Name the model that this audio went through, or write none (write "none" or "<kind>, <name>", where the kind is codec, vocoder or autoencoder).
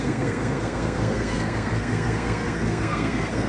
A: codec, SNAC